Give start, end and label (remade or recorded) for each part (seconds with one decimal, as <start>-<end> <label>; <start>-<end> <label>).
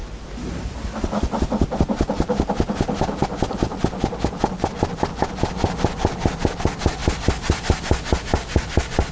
0.0-9.1 recorded